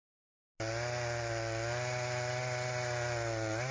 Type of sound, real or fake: real